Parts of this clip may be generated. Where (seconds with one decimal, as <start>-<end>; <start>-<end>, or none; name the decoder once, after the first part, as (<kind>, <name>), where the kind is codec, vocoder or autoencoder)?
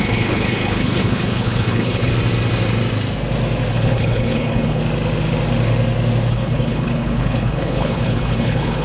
0.0-2.1 (codec, HILCodec); 3.7-4.8; 6.3-8.8